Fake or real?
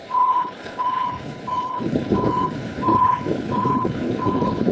fake